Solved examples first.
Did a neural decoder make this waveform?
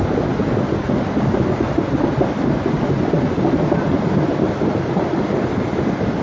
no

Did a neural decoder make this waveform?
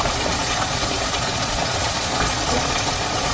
yes